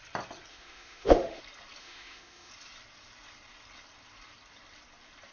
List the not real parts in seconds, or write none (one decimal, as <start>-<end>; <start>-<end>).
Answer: 0.5-1.4; 1.8-2.5